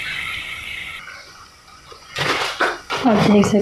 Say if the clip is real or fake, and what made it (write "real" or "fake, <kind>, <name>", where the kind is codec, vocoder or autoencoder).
fake, vocoder, Vocos